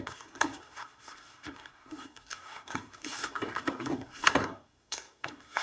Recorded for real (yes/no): no